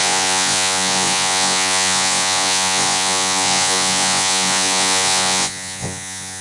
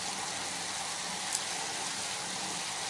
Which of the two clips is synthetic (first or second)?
first